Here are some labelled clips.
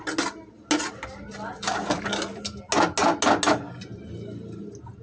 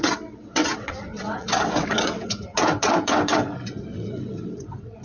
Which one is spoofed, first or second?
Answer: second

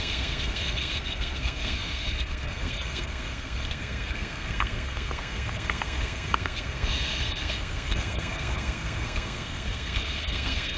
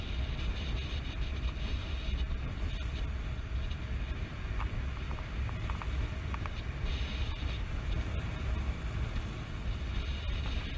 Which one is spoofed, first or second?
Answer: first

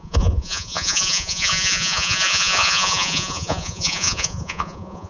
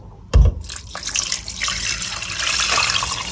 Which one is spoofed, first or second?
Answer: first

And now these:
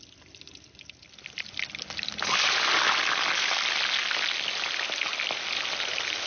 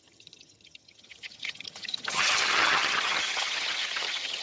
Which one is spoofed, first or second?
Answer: second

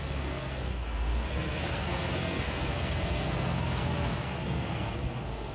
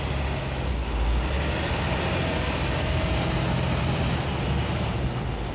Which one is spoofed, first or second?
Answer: first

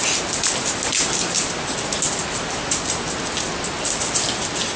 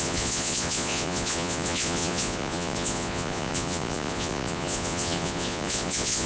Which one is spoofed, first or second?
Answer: second